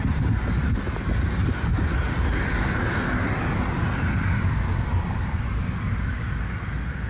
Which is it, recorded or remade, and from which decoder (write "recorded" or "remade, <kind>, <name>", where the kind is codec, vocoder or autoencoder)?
recorded